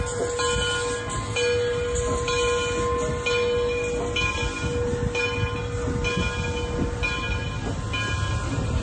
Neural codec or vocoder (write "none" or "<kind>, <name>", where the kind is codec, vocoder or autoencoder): none